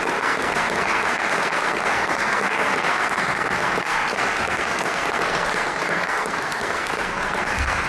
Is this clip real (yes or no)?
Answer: no